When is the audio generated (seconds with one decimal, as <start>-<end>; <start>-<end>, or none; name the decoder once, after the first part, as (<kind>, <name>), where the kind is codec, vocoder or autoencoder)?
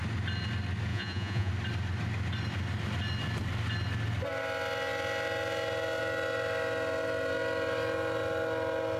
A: 0.9-1.5 (vocoder, Vocos)